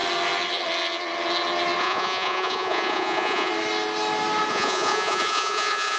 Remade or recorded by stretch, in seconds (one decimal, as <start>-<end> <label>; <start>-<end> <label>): 0.0-1.8 recorded; 1.8-3.5 remade; 3.5-4.5 recorded; 4.5-6.0 remade